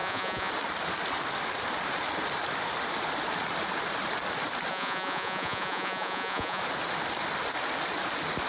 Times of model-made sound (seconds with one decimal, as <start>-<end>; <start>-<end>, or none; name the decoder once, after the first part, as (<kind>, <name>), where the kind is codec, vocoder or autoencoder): 0.0-0.5 (vocoder, Vocos); 4.7-6.6